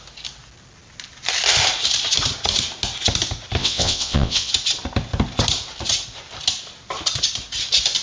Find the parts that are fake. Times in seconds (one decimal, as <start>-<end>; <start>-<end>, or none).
3.6-4.5